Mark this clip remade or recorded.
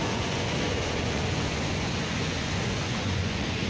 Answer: remade